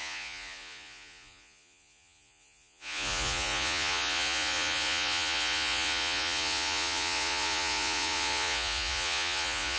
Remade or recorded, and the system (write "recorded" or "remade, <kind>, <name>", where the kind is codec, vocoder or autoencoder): remade, vocoder, Vocos